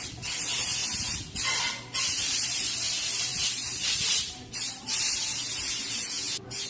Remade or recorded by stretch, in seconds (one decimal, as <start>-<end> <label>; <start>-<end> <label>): 0.0-5.3 recorded; 5.3-6.7 remade